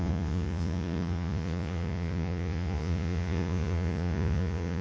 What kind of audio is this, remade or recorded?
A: remade